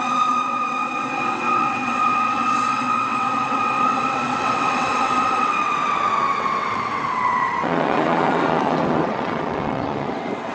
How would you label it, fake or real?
fake